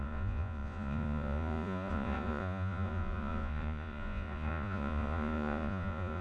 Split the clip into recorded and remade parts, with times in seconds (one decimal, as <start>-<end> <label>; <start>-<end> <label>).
0.0-6.2 remade